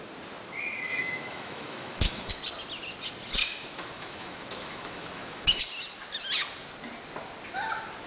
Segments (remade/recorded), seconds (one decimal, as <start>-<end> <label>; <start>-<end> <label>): 0.0-0.9 recorded; 0.9-2.3 remade; 2.3-3.4 recorded; 3.4-5.6 remade; 5.6-8.1 recorded